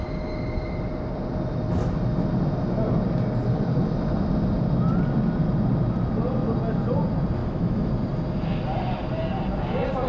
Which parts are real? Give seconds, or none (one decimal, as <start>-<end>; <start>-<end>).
0.0-7.4; 7.9-10.1